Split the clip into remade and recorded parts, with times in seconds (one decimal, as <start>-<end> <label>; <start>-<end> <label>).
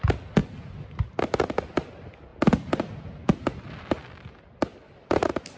0.0-5.6 recorded